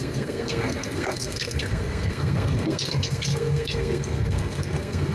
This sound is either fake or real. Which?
fake